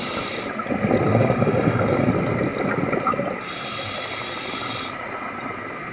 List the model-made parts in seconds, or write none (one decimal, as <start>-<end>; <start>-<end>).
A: 1.1-2.1